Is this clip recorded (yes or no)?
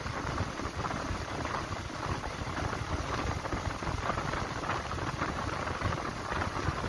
yes